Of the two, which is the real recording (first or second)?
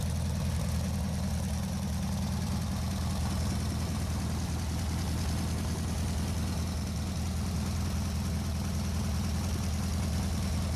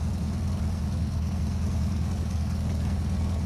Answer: first